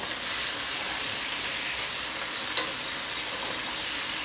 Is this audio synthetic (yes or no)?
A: no